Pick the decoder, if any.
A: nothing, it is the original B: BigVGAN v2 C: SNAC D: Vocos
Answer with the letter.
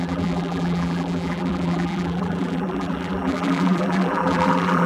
B